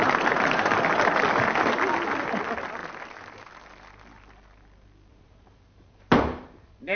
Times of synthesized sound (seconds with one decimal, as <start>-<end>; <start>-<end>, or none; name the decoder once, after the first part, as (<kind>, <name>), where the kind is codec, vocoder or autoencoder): 5.1-7.0 (vocoder, BigVGAN v2)